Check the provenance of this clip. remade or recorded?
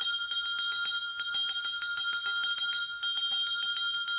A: recorded